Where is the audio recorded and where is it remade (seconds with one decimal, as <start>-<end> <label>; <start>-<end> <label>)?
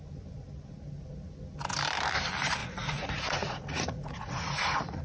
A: 0.0-2.6 recorded; 2.6-5.0 remade